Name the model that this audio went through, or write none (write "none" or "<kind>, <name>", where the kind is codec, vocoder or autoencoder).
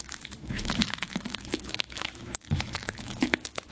autoencoder, DAC-VAE